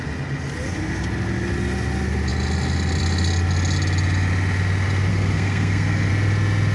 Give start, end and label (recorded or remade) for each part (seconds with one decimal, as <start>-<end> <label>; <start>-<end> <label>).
0.0-5.1 recorded; 5.1-6.1 remade; 6.1-6.7 recorded